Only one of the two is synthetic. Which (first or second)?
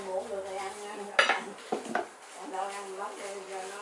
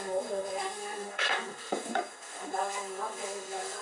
second